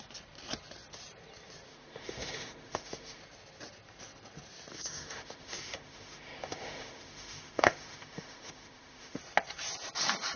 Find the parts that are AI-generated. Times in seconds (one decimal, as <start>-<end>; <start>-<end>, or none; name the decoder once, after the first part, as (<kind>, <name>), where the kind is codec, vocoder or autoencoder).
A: 1.7-3.2 (autoencoder, DAC-VAE); 4.7-9.2